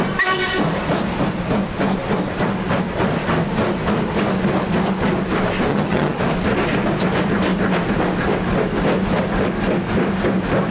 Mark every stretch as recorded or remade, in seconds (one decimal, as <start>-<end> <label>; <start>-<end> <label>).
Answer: 0.0-5.7 recorded; 5.7-6.2 remade; 6.2-10.7 recorded

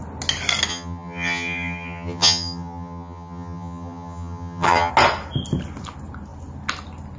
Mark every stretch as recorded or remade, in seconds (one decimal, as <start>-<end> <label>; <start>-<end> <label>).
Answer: 0.0-0.7 recorded; 0.7-4.9 remade; 4.9-7.2 recorded